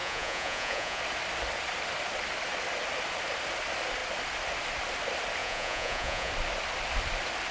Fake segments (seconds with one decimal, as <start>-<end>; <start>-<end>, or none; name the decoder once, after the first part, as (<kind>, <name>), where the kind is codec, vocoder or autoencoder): 0.0-1.0 (vocoder, Vocos); 5.4-6.3